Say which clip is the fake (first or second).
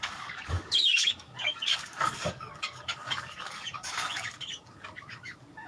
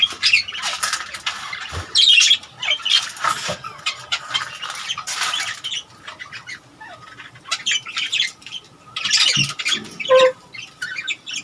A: first